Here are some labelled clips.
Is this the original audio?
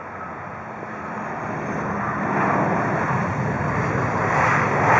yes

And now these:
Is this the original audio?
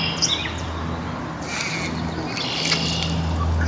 yes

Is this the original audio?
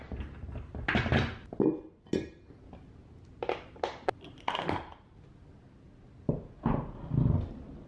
yes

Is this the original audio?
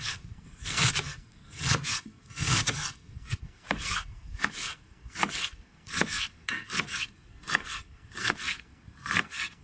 no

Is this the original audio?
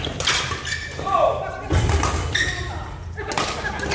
yes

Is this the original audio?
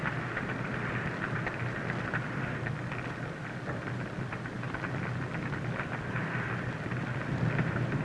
yes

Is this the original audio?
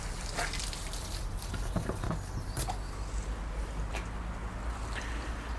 yes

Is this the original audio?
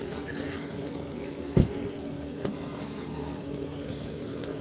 no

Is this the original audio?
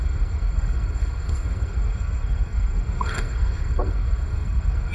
no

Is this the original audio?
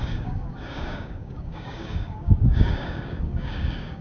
no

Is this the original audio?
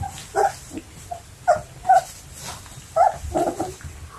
yes